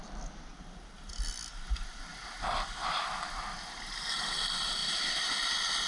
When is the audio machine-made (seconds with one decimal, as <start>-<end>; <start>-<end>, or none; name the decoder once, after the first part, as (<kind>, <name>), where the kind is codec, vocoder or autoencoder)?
none